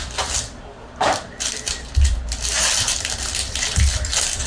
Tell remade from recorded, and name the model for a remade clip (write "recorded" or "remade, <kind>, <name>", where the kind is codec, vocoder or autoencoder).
recorded